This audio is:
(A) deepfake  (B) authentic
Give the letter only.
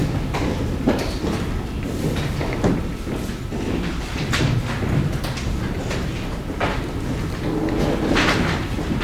B